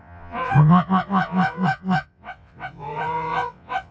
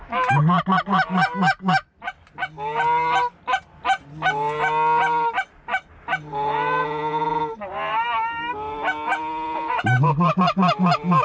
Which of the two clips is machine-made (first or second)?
first